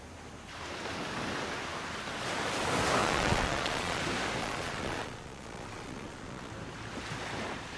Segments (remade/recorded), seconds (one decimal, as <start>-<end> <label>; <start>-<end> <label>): 0.0-3.0 recorded; 3.0-4.0 remade; 4.0-4.4 recorded; 4.4-6.5 remade; 6.5-7.8 recorded